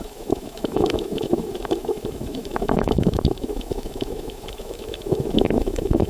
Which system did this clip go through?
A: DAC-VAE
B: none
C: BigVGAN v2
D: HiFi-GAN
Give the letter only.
A